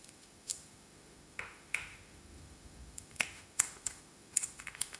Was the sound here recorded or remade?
remade